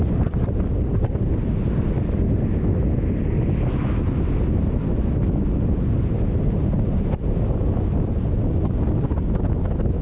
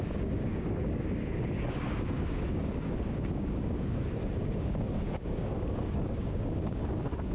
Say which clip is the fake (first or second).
second